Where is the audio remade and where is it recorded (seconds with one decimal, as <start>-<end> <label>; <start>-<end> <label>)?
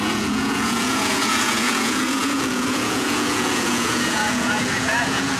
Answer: 0.0-5.4 remade